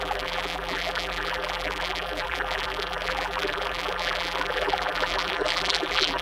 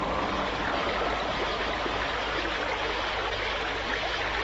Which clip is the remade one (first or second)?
first